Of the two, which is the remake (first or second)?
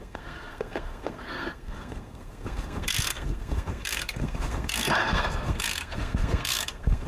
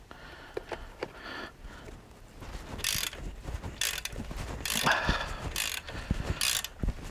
first